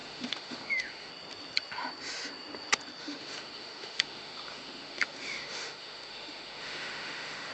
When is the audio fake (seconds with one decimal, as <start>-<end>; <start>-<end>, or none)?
0.0-1.1; 3.0-7.5